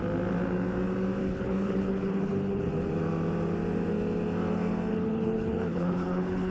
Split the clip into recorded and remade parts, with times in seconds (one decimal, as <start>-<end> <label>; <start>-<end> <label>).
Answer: 0.0-1.2 recorded; 1.2-2.7 remade; 2.7-4.9 recorded; 4.9-6.5 remade